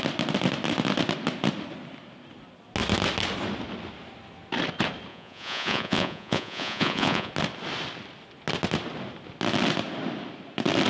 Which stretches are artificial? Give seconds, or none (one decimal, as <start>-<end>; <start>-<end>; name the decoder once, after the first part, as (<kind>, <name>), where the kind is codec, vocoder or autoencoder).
5.1-7.3 (vocoder, Vocos)